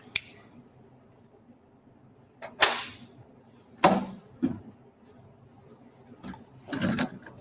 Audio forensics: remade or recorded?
recorded